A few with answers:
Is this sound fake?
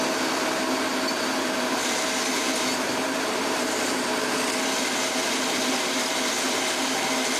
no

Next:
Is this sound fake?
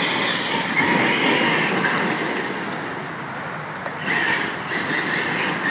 no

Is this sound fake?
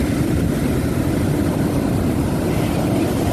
no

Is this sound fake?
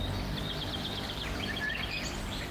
no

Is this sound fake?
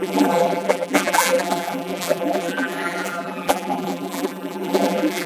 yes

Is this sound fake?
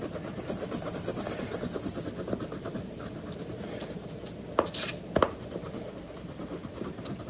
no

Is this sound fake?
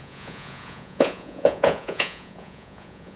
yes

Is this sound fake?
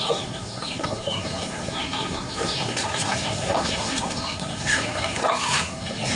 yes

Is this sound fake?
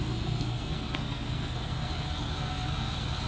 yes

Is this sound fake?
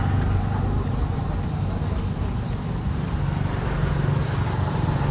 no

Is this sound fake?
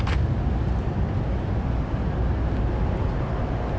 no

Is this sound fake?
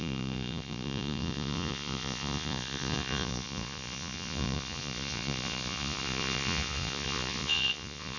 yes